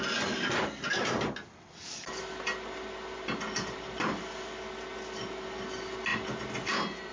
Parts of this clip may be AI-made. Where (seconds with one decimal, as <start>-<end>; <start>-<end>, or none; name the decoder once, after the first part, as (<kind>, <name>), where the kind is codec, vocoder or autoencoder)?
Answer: none